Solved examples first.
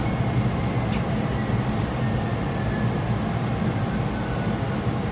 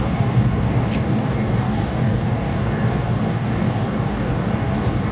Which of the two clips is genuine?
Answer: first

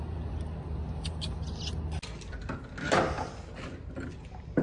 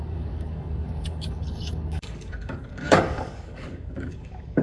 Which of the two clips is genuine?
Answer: first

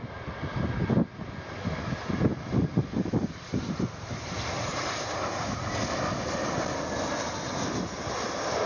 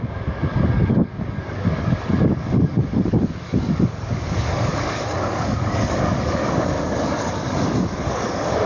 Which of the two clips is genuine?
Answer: first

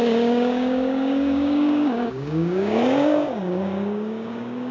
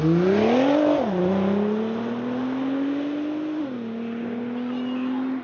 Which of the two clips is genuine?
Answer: second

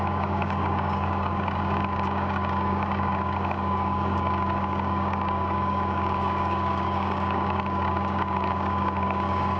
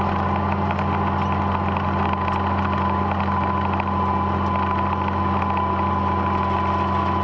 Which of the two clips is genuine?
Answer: second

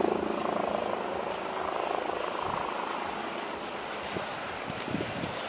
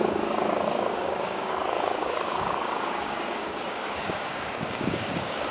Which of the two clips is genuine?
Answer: first